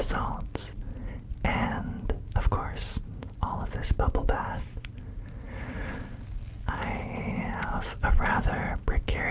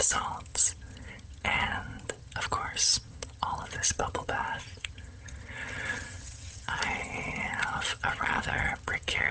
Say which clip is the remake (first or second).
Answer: second